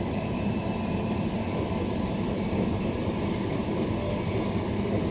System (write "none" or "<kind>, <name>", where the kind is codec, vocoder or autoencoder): none